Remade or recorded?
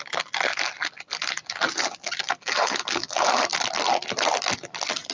recorded